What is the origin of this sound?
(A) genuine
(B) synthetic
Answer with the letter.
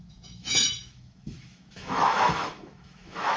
B